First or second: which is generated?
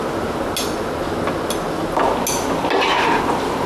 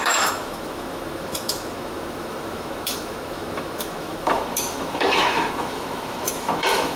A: second